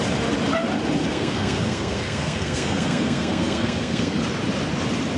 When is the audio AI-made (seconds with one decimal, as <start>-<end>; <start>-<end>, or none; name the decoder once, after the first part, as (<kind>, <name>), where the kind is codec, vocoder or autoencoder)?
1.1-4.2 (codec, SNAC)